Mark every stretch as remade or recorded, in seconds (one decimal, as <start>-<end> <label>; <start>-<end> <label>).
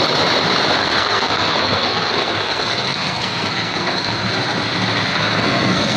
0.0-0.8 recorded; 0.8-4.3 remade; 4.3-5.1 recorded; 5.1-6.0 remade